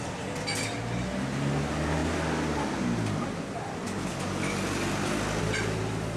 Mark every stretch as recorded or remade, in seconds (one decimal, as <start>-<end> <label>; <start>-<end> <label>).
0.0-6.2 recorded